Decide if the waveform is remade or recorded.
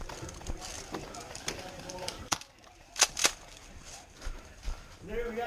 remade